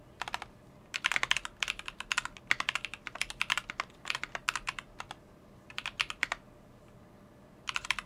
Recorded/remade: recorded